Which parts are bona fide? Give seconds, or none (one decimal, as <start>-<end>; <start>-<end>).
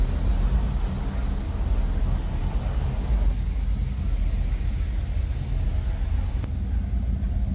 0.0-7.5